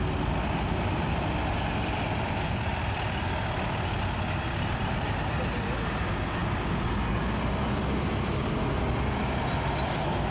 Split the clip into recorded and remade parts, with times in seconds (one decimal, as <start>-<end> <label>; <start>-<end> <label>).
0.0-10.3 recorded